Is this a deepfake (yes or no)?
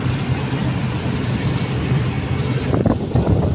no